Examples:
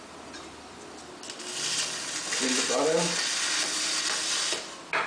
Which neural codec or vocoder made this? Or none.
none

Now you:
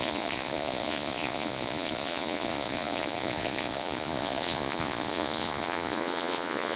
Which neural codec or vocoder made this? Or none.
vocoder, Vocos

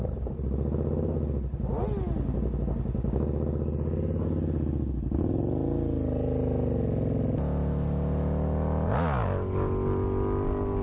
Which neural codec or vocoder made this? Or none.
none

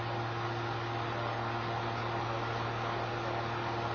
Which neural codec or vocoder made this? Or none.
none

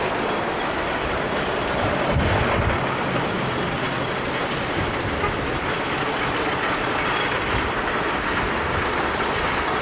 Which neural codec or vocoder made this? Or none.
none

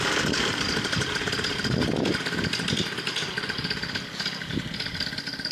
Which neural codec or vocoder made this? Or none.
none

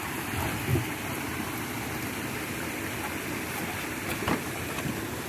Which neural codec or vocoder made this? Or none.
none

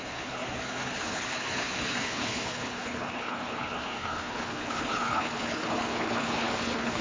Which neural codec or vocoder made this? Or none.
codec, HILCodec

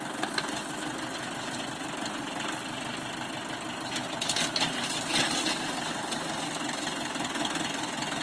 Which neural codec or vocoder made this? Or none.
none